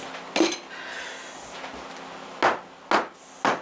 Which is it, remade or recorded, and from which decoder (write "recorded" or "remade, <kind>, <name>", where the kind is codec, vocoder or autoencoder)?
recorded